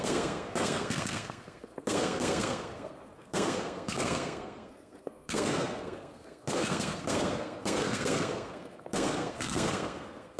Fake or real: fake